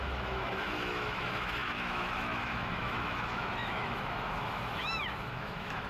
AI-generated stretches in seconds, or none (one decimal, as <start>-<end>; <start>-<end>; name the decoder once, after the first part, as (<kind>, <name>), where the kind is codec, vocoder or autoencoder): 0.0-5.9 (autoencoder, DAC-VAE)